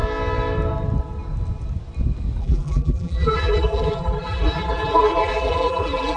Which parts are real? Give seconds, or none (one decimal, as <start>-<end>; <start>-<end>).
0.0-2.4